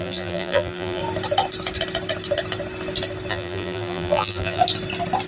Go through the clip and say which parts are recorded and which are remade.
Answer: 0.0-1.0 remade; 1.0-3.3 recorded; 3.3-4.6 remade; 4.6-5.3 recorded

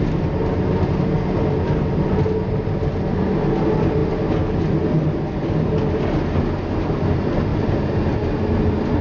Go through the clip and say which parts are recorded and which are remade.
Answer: 0.0-9.0 recorded

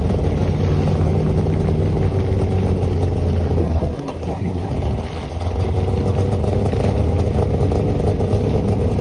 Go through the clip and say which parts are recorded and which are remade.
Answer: 0.0-3.6 recorded; 3.6-4.7 remade; 4.7-9.0 recorded

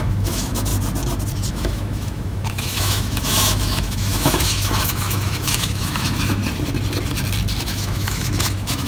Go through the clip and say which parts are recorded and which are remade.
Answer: 0.0-0.7 remade; 0.7-1.5 recorded; 1.5-6.4 remade; 6.4-7.6 recorded; 7.6-8.9 remade

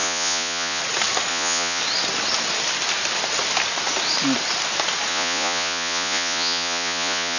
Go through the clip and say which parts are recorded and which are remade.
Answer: 0.0-0.8 remade; 0.8-1.3 recorded; 1.3-1.8 remade; 1.8-5.1 recorded; 5.1-7.4 remade